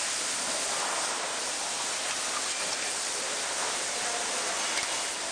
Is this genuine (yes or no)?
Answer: yes